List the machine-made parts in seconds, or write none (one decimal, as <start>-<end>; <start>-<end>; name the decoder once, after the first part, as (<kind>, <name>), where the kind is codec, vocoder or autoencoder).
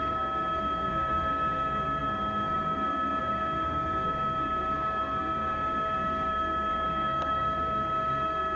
0.0-8.6 (codec, SNAC)